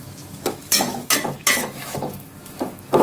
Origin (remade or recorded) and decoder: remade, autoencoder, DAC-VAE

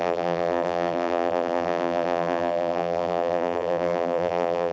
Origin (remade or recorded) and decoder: remade, vocoder, BigVGAN v2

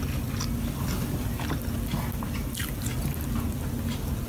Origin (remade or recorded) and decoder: recorded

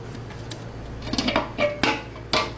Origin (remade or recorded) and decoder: recorded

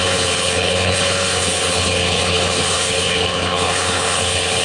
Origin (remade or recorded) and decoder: remade, codec, HILCodec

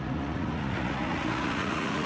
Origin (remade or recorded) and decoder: remade, vocoder, Vocos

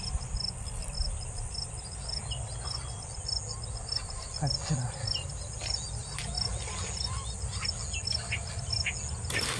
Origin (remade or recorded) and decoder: recorded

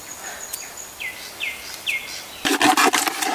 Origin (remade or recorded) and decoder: recorded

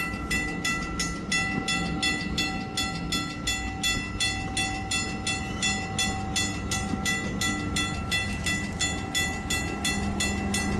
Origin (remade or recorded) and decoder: recorded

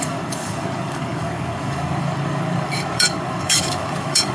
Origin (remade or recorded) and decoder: remade, codec, DAC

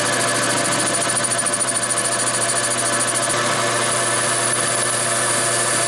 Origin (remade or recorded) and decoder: recorded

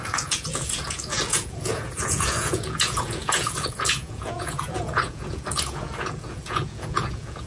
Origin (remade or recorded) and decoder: remade, vocoder, Vocos